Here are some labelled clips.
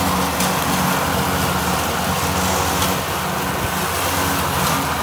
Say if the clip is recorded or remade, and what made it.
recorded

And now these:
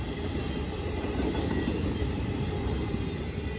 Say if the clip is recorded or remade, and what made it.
recorded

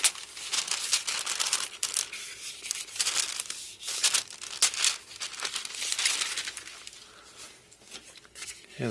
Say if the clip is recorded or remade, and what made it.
recorded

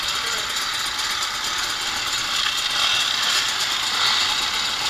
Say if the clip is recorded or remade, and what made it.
recorded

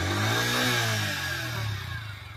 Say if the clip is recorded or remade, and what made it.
recorded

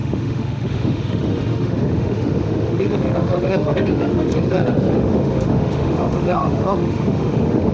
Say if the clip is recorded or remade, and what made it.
remade, autoencoder, DAC-VAE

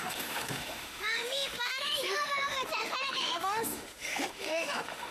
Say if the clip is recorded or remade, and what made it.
remade, autoencoder, DAC-VAE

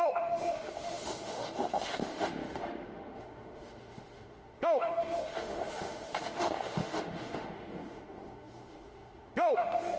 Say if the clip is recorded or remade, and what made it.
remade, autoencoder, DAC-VAE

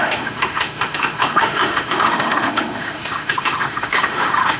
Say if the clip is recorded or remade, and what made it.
remade, autoencoder, DAC-VAE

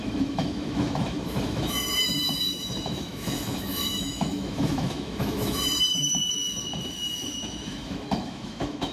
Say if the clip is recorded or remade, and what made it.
remade, autoencoder, DAC-VAE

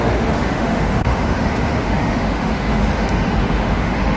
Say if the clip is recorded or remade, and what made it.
remade, autoencoder, DAC-VAE